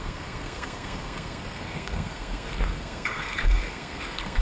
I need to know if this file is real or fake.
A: fake